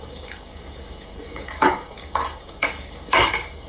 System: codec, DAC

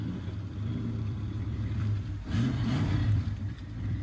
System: vocoder, BigVGAN v2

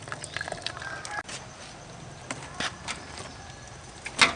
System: none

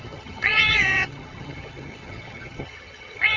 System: vocoder, HiFi-GAN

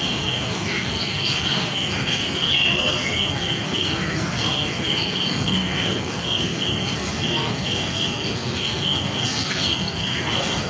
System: codec, SNAC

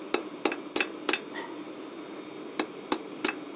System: none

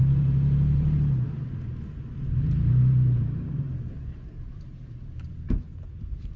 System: vocoder, BigVGAN v2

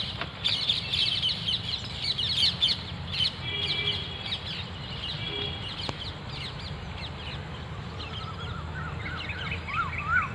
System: none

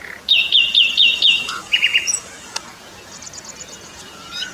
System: vocoder, Vocos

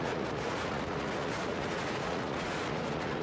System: vocoder, Vocos